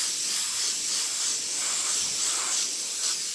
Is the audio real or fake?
real